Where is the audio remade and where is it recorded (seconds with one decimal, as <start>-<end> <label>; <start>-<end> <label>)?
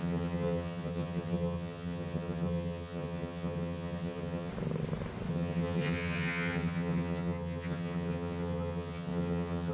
0.0-4.5 remade; 4.5-5.3 recorded; 5.3-9.7 remade